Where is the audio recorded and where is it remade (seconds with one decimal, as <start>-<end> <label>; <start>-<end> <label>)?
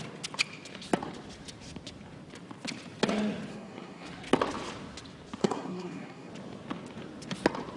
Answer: 0.0-3.5 recorded; 3.5-4.1 remade; 4.1-5.4 recorded; 5.4-6.3 remade; 6.3-7.8 recorded